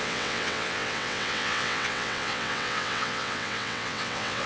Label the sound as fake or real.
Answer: fake